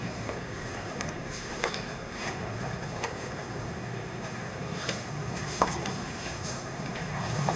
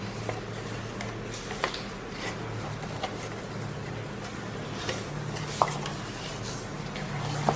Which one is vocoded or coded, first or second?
first